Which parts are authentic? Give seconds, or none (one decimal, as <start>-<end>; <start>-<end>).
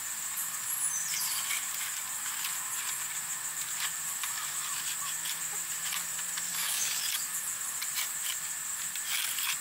0.0-6.5; 7.0-9.6